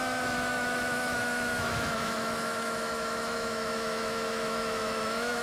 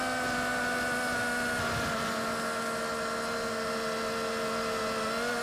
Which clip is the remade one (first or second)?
first